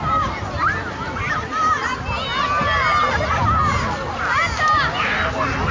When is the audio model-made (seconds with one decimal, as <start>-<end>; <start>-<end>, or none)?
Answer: none